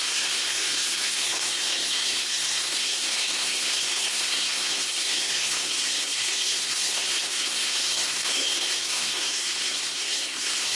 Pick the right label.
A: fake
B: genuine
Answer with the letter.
A